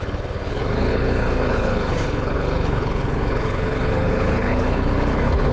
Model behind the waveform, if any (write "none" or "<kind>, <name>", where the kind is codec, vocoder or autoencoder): codec, HILCodec